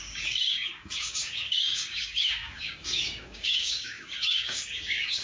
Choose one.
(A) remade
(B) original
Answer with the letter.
A